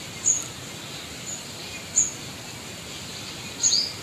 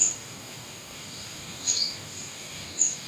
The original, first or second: first